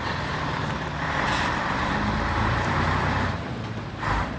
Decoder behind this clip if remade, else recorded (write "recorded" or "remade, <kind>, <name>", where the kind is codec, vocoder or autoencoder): remade, vocoder, BigVGAN v2